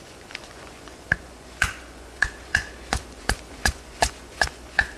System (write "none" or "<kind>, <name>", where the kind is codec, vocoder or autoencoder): vocoder, Vocos